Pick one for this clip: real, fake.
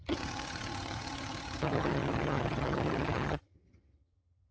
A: fake